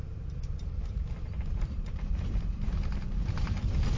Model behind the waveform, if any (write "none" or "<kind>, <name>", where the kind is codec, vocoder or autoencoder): vocoder, BigVGAN v2